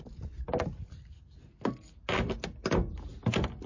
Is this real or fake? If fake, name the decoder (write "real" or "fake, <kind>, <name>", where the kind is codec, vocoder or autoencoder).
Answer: real